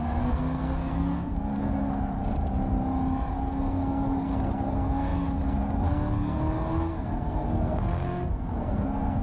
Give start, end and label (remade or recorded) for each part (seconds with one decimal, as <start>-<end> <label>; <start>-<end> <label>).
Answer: 0.0-2.2 remade; 2.2-3.3 recorded; 3.3-9.2 remade